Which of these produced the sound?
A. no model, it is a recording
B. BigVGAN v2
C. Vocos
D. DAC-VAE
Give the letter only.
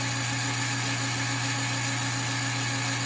A